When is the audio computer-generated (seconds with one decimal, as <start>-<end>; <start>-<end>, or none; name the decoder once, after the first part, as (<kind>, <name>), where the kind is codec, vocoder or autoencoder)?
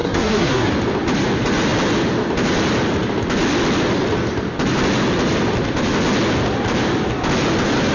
0.0-0.7 (codec, SNAC)